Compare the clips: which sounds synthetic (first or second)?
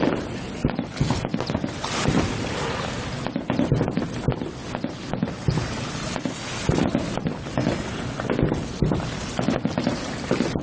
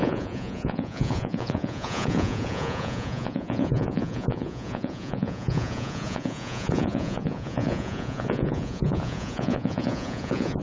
second